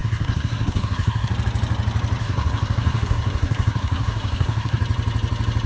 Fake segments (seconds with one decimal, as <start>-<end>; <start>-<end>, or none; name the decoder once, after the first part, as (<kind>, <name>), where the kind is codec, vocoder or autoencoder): 0.0-1.3 (codec, SNAC); 2.2-4.8